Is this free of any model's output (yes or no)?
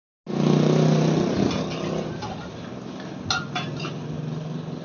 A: yes